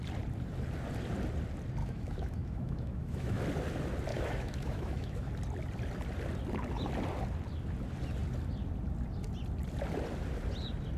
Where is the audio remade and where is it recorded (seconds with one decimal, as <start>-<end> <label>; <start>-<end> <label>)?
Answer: 0.0-1.8 recorded; 1.8-3.4 remade; 3.4-4.1 recorded; 4.1-5.3 remade; 5.3-11.0 recorded